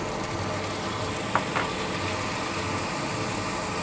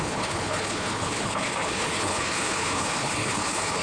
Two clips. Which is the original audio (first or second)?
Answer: first